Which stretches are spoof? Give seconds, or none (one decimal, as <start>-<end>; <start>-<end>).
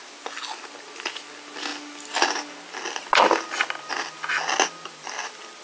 none